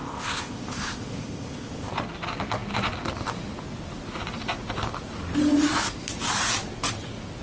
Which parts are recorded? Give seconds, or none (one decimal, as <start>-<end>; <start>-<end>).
1.9-7.4